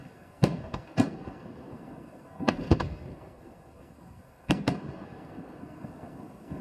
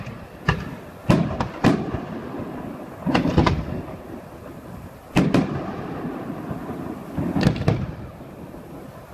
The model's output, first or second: first